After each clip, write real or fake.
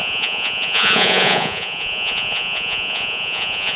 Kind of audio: fake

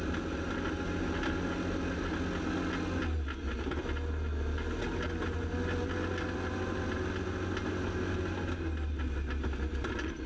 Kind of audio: real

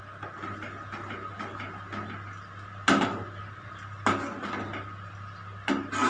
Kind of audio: real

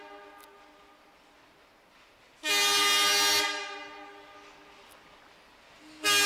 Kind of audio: real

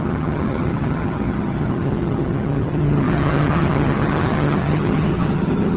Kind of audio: fake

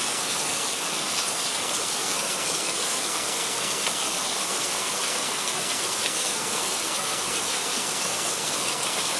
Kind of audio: fake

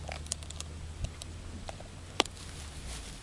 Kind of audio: real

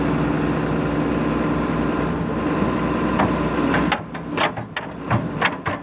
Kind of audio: real